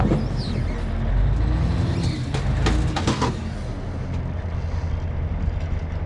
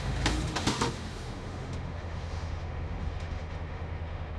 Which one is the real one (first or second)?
first